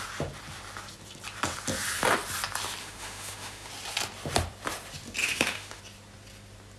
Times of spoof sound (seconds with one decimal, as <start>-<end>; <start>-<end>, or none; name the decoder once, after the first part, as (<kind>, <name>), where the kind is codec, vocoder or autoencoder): 2.8-3.7 (autoencoder, DAC-VAE); 5.2-5.8